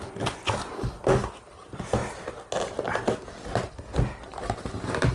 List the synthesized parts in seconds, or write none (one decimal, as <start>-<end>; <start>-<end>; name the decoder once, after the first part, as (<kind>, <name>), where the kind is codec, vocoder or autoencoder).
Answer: 2.0-2.6 (vocoder, BigVGAN v2)